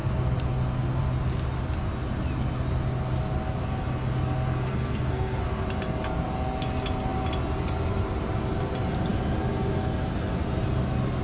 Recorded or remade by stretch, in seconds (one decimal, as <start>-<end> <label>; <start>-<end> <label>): 0.0-4.7 recorded; 4.7-5.4 remade; 5.4-11.2 recorded